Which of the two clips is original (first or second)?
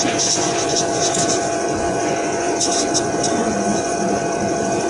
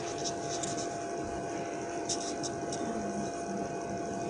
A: second